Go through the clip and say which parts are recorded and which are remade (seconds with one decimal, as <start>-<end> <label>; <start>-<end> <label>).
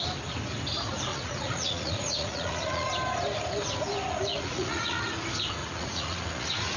0.0-1.1 recorded; 1.1-2.9 remade; 2.9-4.3 recorded; 4.3-5.0 remade; 5.0-5.6 recorded; 5.6-6.8 remade